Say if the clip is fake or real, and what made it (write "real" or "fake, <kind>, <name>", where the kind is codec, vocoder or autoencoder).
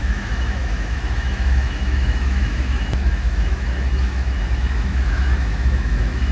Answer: fake, autoencoder, DAC-VAE